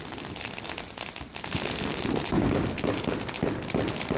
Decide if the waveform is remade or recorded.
recorded